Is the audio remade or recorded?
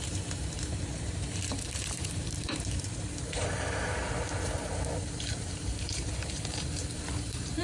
remade